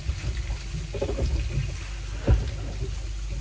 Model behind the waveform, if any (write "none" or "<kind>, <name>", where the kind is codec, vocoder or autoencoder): none